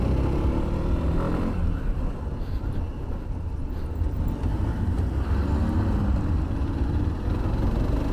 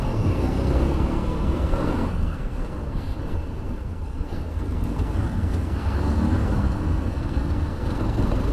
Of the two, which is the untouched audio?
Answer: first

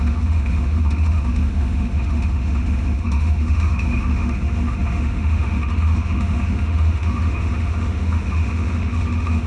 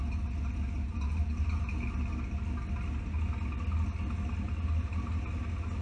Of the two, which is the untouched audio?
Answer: second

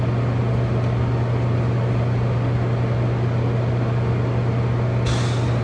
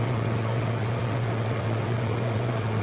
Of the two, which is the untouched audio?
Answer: first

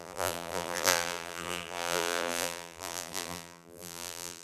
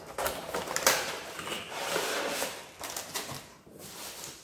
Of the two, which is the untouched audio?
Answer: second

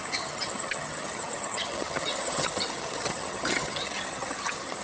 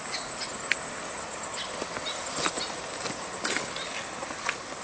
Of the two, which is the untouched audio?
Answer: second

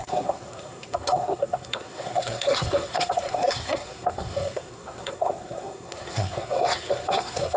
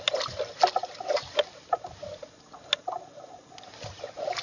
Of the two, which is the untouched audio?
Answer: second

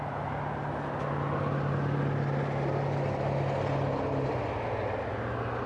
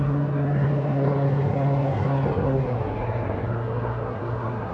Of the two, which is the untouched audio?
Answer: first